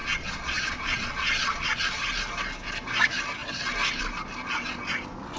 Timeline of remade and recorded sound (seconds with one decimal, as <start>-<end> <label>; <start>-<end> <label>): 0.0-2.0 remade; 2.0-5.4 recorded